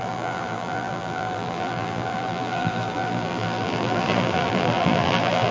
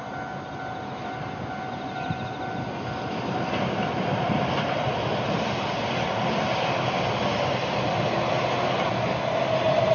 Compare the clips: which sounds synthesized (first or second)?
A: first